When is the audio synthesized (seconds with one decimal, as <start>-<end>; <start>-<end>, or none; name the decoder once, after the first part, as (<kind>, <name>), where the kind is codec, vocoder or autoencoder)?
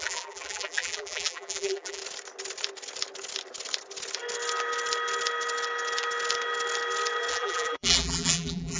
0.0-2.0 (vocoder, BigVGAN v2); 7.3-8.8